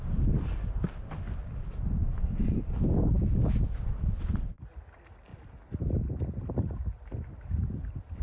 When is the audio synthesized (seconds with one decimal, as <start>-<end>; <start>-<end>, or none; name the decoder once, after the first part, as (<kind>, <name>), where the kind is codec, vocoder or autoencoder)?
none